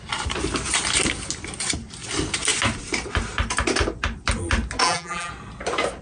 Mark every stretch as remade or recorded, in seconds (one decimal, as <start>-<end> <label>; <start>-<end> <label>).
0.0-4.8 recorded; 4.8-5.3 remade; 5.3-6.0 recorded